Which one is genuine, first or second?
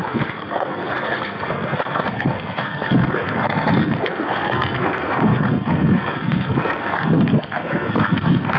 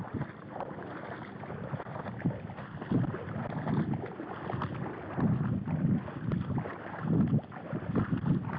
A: second